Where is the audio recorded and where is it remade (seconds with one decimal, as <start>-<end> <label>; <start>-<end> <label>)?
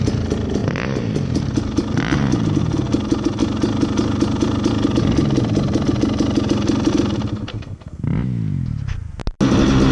0.0-7.5 recorded; 7.5-8.0 remade; 8.0-9.9 recorded